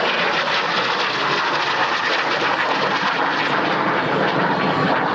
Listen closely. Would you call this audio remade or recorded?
recorded